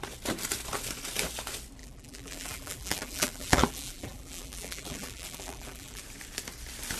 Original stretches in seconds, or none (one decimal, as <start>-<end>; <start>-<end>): 0.0-1.8; 6.0-7.0